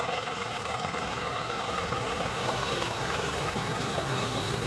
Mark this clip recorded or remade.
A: remade